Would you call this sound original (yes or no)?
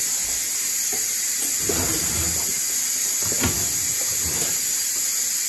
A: yes